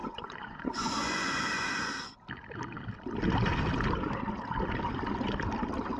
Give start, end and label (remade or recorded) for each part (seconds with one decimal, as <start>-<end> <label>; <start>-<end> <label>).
0.0-1.9 remade; 1.9-6.0 recorded

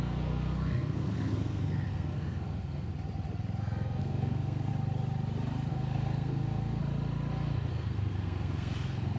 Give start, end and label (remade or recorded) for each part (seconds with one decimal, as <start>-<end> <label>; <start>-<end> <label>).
0.0-2.9 remade; 2.9-3.6 recorded; 3.6-4.7 remade; 4.7-5.7 recorded; 5.7-6.8 remade; 6.8-7.7 recorded; 7.7-9.2 remade

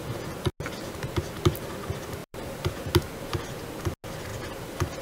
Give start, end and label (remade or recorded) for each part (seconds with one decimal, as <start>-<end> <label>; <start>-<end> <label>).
0.0-2.2 recorded; 2.2-2.9 remade; 2.9-5.0 recorded

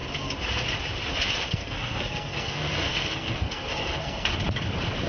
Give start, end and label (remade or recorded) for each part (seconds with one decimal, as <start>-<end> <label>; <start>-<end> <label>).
0.0-1.5 recorded; 1.5-4.3 remade; 4.3-5.1 recorded

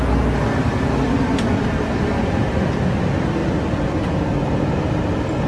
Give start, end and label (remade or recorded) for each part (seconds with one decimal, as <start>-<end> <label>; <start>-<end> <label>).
0.0-5.5 recorded

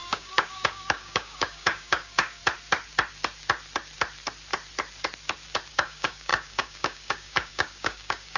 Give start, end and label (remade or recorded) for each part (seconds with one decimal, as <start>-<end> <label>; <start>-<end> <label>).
0.0-2.4 remade; 2.4-5.7 recorded; 5.7-8.4 remade

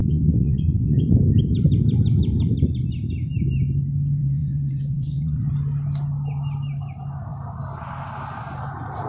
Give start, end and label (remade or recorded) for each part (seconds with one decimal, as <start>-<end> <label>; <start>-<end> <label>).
0.0-1.1 remade; 1.1-4.2 recorded; 4.2-5.5 remade; 5.5-9.1 recorded

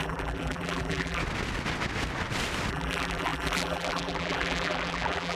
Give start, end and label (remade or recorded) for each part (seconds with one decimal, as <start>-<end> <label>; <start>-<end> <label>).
0.0-1.2 remade; 1.2-2.7 recorded; 2.7-5.4 remade